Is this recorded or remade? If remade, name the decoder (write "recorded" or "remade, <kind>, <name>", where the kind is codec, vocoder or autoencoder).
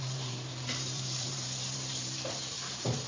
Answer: remade, vocoder, BigVGAN v2